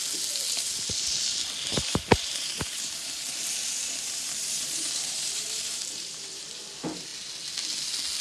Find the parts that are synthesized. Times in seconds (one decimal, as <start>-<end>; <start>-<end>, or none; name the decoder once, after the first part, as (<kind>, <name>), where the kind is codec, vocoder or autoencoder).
1.7-6.5 (vocoder, BigVGAN v2)

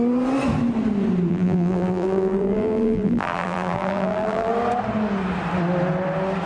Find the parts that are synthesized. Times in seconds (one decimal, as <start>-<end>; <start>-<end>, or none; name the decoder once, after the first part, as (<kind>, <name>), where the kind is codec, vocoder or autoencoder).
1.3-4.5 (vocoder, BigVGAN v2)

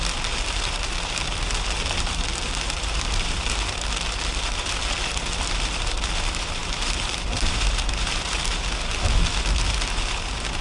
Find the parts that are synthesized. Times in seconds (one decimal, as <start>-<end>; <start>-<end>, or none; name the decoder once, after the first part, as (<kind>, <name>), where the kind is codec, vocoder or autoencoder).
6.6-8.0 (vocoder, BigVGAN v2)

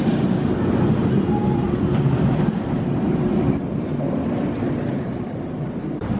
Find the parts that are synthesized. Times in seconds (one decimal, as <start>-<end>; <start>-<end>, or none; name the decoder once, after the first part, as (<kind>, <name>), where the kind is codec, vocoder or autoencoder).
0.0-6.2 (vocoder, BigVGAN v2)

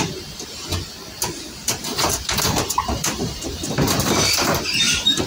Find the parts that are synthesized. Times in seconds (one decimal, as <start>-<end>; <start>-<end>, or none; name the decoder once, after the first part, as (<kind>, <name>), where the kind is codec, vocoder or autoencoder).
1.9-5.3 (vocoder, BigVGAN v2)

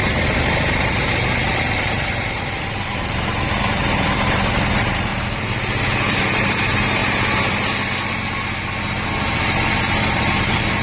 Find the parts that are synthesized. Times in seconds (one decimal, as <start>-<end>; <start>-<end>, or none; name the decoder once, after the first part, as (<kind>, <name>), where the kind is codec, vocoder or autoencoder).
0.0-5.1 (vocoder, BigVGAN v2); 6.4-7.0; 9.2-10.8

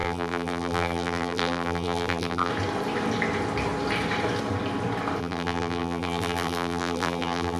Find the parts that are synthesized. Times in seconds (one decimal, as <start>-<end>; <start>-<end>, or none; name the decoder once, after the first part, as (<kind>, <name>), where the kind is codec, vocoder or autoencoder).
0.0-2.5 (vocoder, BigVGAN v2); 5.2-7.6